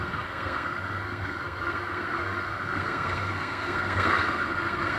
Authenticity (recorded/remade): remade